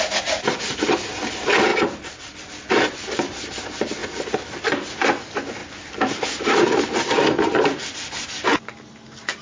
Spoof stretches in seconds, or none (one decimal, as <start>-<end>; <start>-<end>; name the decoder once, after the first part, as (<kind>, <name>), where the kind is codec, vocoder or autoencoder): 1.7-2.4 (vocoder, BigVGAN v2); 5.6-6.8